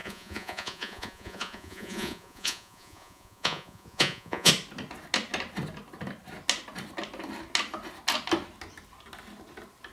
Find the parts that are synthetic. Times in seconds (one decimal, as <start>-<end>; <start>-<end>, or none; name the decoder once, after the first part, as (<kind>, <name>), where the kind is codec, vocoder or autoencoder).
0.0-4.5 (vocoder, Vocos)